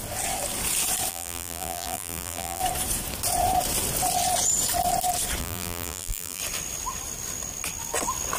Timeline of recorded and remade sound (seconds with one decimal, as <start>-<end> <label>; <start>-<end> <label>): 0.0-1.1 recorded; 1.1-2.6 remade; 2.6-5.4 recorded; 5.4-6.4 remade; 6.4-8.4 recorded

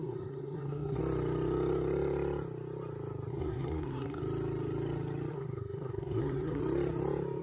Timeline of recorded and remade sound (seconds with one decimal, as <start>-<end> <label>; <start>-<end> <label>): 0.0-1.0 remade; 1.0-3.3 recorded; 3.3-4.2 remade; 4.2-5.3 recorded; 5.3-6.6 remade; 6.6-7.4 recorded

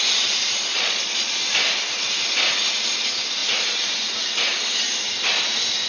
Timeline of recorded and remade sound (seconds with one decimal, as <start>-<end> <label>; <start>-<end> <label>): 0.0-0.7 recorded; 0.7-1.4 remade; 1.4-5.9 recorded

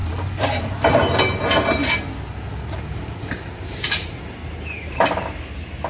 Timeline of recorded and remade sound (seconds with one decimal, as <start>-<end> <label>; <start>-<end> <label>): 0.0-4.4 remade; 4.4-5.9 recorded